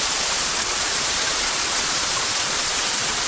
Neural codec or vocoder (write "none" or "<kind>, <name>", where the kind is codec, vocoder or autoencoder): vocoder, Vocos